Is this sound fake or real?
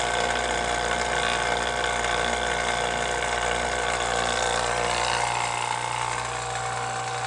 real